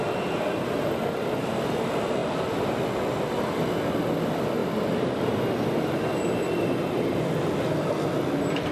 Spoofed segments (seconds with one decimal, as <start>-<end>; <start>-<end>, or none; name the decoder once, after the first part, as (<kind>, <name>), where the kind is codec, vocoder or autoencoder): none